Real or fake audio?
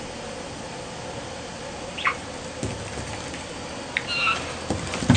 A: real